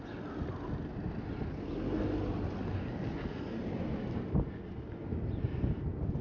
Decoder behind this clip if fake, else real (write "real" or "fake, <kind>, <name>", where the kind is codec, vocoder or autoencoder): real